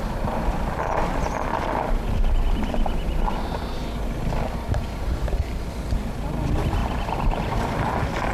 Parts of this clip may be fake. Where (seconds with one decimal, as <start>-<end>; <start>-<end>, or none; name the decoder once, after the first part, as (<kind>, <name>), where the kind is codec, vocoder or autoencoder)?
6.8-7.9 (vocoder, BigVGAN v2)